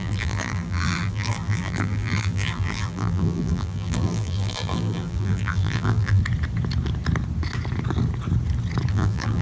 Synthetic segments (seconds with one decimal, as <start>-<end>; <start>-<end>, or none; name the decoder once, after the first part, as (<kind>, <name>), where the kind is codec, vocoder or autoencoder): 0.0-6.2 (vocoder, BigVGAN v2); 8.9-9.4